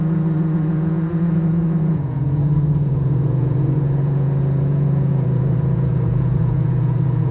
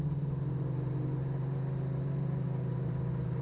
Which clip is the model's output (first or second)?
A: first